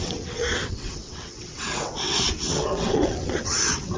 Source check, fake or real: fake